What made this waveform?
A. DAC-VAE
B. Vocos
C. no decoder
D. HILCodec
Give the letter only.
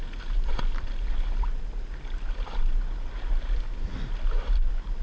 C